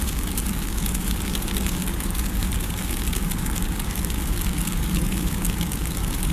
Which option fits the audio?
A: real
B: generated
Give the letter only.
B